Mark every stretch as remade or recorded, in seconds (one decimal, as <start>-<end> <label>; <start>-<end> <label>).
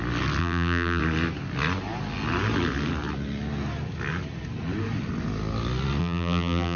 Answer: 0.0-0.4 recorded; 0.4-1.0 remade; 1.0-6.0 recorded; 6.0-6.8 remade